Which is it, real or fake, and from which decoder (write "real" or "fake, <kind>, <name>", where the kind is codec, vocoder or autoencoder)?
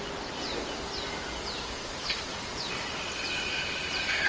real